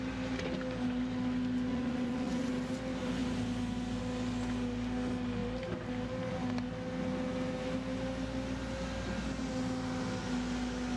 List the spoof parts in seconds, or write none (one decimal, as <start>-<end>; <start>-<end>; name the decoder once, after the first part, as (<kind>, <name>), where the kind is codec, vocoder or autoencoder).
1.7-2.5 (vocoder, Vocos)